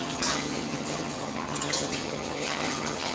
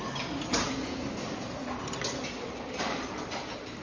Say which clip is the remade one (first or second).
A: first